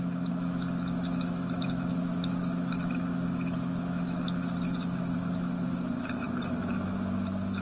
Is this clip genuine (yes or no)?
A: no